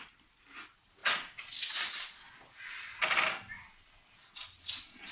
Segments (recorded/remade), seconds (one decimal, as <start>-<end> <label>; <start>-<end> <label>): 0.0-5.1 recorded